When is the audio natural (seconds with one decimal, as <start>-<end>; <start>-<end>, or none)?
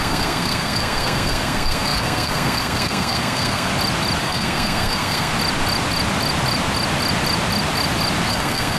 3.7-4.2; 5.3-8.3